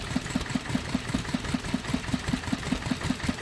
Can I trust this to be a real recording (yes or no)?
no